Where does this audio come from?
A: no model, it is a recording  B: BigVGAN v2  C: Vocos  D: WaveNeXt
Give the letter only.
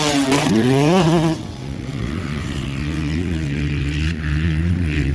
D